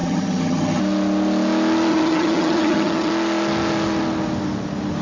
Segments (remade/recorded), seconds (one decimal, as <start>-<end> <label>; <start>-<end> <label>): 0.0-0.8 remade; 0.8-1.9 recorded; 1.9-3.1 remade; 3.1-5.0 recorded

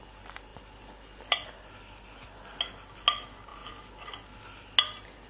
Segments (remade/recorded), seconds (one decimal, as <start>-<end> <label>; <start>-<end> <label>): 0.0-5.3 recorded